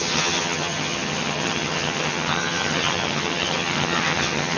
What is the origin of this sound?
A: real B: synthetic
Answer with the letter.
B